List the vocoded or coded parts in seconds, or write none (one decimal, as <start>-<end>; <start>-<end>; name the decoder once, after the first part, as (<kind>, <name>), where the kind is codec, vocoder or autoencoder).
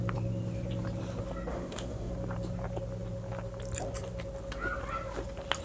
1.5-2.1 (autoencoder, DAC-VAE)